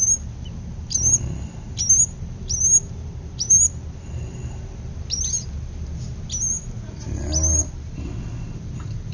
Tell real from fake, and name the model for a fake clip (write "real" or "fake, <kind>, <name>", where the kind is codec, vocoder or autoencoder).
real